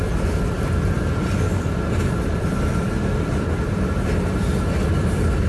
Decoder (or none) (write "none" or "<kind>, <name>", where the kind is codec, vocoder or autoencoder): none